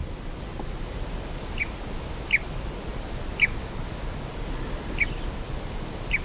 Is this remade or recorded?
recorded